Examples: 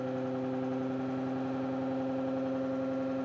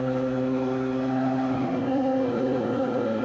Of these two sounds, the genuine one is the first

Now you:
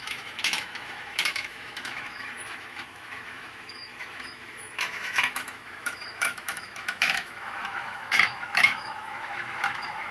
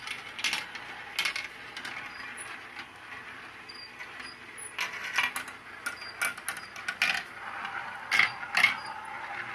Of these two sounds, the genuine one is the second